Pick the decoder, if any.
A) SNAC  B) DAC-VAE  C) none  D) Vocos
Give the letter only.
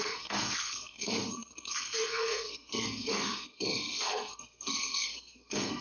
A